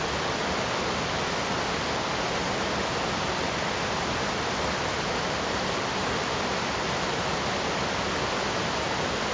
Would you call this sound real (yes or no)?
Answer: yes